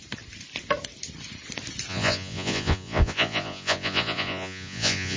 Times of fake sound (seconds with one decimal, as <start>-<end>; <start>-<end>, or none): 1.9-5.2